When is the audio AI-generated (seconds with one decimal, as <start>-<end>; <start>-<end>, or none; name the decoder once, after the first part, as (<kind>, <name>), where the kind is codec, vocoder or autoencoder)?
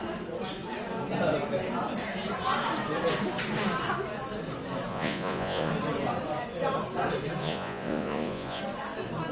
4.9-5.7 (vocoder, Vocos); 7.4-8.6